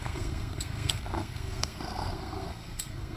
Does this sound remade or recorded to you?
remade